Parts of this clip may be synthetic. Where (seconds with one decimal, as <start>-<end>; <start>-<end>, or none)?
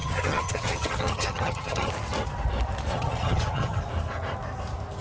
0.0-1.9; 2.9-3.8